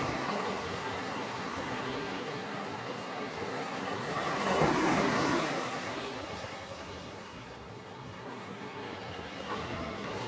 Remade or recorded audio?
remade